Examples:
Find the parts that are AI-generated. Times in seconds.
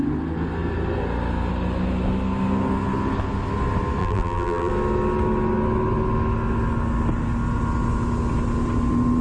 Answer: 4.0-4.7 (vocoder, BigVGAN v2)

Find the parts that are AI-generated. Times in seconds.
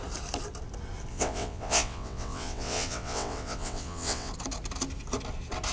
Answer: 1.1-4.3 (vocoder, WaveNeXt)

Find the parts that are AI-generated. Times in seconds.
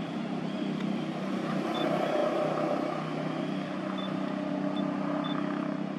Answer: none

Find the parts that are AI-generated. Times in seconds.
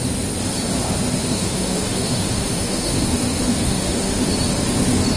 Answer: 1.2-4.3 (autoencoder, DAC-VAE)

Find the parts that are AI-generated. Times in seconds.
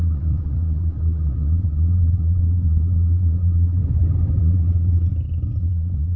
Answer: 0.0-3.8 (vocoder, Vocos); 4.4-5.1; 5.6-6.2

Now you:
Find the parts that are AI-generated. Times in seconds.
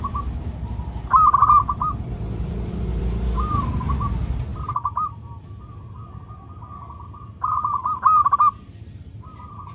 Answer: none